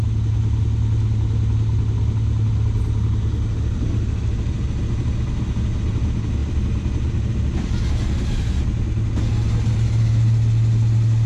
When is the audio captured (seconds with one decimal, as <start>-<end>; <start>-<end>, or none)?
0.0-11.3